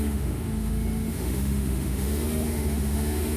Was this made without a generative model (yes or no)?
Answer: no